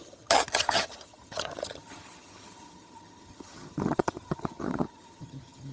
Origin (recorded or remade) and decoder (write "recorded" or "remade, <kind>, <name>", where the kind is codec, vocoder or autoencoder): remade, vocoder, HiFi-GAN